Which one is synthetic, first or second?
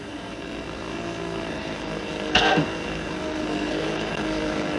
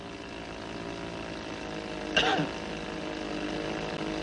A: first